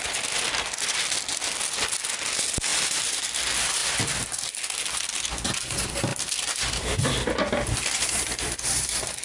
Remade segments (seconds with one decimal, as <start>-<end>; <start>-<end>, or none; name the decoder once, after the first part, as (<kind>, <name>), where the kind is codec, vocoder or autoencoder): 2.7-3.2 (vocoder, BigVGAN v2); 3.8-4.5; 6.1-7.1